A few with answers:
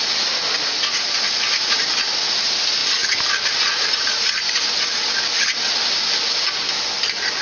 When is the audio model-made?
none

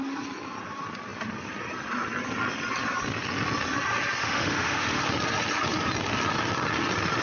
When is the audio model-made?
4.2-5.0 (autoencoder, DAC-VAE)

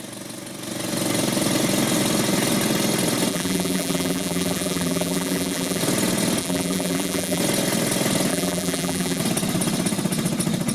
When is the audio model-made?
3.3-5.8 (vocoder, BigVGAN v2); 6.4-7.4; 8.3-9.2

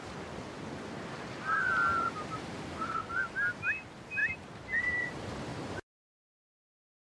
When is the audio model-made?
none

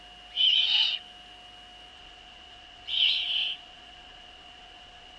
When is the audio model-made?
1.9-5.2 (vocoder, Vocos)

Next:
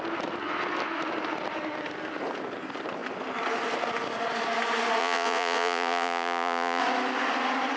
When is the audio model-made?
5.0-6.8 (vocoder, Vocos)

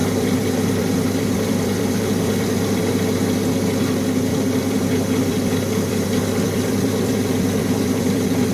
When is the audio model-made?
0.0-2.8 (vocoder, BigVGAN v2); 4.3-8.5